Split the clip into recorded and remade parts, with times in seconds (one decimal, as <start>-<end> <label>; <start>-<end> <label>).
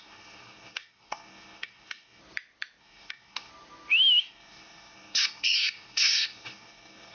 0.0-2.2 remade; 2.2-2.8 recorded; 2.8-3.5 remade; 3.5-4.2 recorded; 4.2-7.1 remade